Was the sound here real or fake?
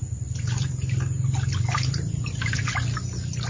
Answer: real